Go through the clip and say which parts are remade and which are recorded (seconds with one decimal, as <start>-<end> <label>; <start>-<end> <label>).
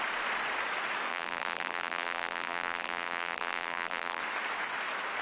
0.0-1.1 recorded; 1.1-4.2 remade; 4.2-5.2 recorded